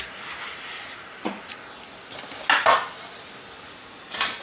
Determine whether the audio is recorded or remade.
recorded